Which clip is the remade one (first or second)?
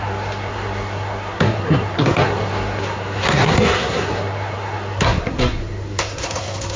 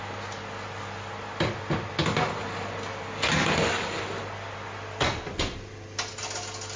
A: first